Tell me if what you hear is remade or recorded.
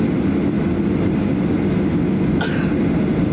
recorded